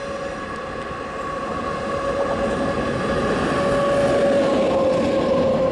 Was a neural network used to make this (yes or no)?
no